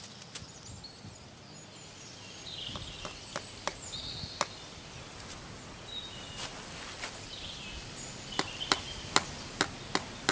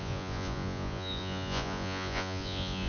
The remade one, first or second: second